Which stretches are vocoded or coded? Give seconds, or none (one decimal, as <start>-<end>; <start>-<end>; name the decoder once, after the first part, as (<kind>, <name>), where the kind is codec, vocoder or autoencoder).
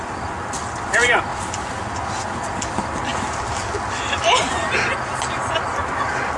3.1-3.7 (vocoder, BigVGAN v2)